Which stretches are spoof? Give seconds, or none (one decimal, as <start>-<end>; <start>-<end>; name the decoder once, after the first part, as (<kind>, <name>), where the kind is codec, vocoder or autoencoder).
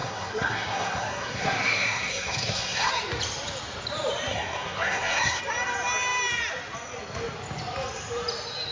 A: 0.0-2.9 (codec, SNAC); 4.3-5.4